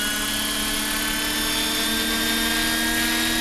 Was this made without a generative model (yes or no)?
yes